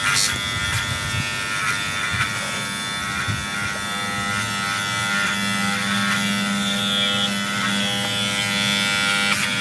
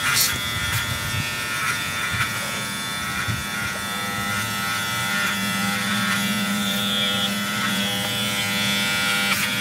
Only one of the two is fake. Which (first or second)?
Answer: second